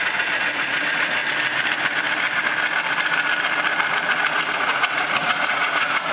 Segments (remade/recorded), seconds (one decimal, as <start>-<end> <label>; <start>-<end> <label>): 0.0-1.2 remade; 1.2-4.5 recorded; 4.5-6.1 remade